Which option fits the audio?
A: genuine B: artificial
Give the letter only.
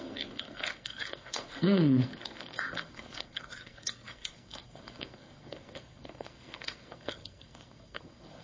B